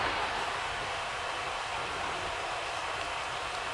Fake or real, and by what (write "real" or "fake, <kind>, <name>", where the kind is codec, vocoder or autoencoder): real